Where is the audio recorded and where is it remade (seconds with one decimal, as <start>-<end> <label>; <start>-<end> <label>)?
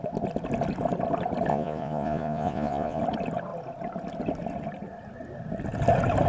0.0-1.5 recorded; 1.5-3.0 remade; 3.0-6.3 recorded